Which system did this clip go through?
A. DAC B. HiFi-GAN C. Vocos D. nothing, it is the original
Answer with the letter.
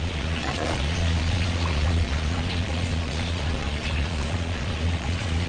C